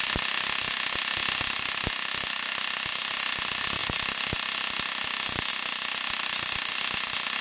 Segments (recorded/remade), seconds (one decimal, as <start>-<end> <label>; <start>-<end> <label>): 0.0-7.4 recorded